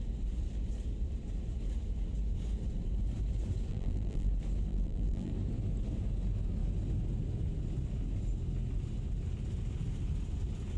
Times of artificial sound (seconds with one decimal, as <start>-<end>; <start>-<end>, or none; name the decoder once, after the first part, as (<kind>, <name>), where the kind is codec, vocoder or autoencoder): 3.7-4.3 (vocoder, BigVGAN v2); 4.7-5.3